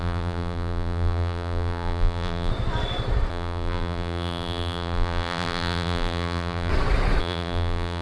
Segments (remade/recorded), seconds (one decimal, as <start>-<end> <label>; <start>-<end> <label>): 0.0-2.5 remade; 2.5-3.3 recorded; 3.3-6.7 remade; 6.7-7.2 recorded; 7.2-8.0 remade